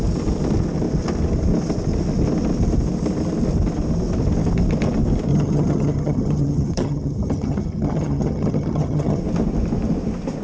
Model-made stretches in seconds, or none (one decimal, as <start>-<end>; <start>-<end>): 5.3-9.2